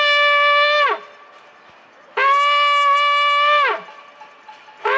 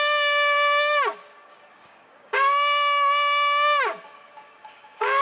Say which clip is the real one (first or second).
first